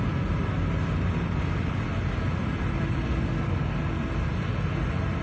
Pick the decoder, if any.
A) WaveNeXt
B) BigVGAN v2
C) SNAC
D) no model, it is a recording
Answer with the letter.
D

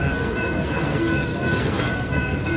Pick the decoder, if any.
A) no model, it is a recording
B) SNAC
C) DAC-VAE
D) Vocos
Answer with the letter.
B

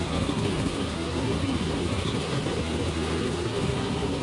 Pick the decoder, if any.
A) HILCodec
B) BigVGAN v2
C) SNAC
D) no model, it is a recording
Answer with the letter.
C